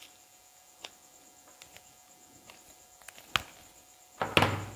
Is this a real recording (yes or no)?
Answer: yes